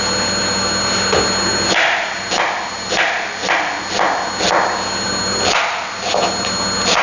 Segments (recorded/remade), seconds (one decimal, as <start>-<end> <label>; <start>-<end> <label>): 0.0-7.0 recorded